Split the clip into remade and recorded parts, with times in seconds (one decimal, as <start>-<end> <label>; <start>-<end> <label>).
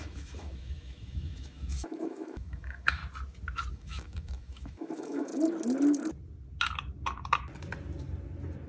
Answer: 0.0-3.0 remade; 3.0-3.7 recorded; 3.7-5.3 remade; 5.3-8.7 recorded